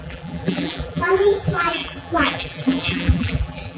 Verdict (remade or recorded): remade